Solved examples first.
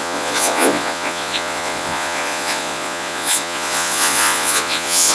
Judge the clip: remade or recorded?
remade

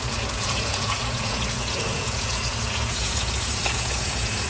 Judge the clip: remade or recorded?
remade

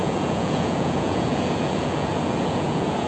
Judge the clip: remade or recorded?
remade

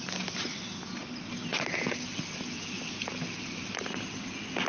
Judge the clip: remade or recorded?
recorded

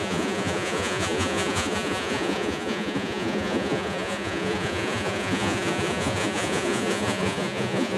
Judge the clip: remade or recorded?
remade